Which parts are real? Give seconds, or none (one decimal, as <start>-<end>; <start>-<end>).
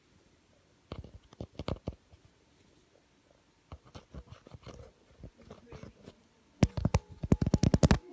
0.0-8.1